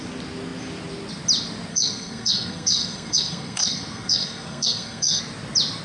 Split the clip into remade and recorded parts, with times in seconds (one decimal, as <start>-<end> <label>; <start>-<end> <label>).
0.0-1.7 recorded; 1.7-5.2 remade; 5.2-5.8 recorded